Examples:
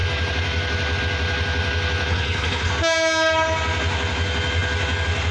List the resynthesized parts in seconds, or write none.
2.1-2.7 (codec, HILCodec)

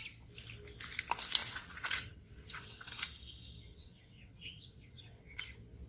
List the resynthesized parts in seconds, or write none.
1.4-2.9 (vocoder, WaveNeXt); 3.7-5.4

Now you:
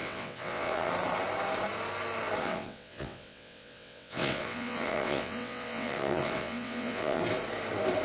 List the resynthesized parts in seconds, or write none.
0.0-0.9 (vocoder, WaveNeXt); 2.4-7.2

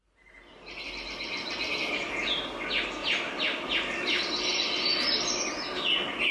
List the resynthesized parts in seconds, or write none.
none

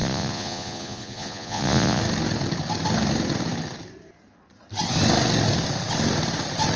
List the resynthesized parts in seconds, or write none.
0.0-2.0 (vocoder, Vocos)

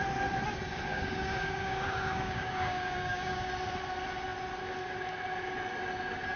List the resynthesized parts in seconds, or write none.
0.9-3.5 (codec, DAC)